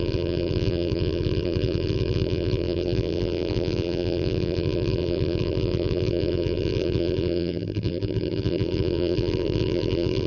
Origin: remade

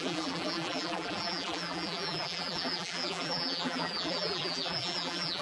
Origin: remade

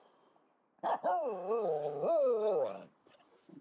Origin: recorded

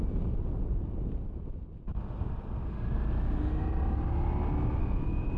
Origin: recorded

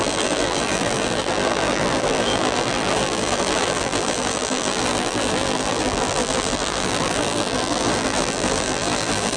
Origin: remade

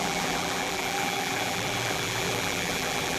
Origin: remade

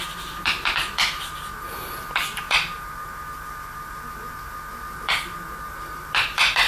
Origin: remade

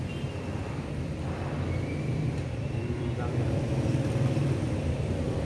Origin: remade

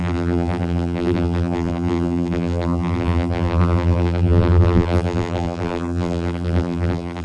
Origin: remade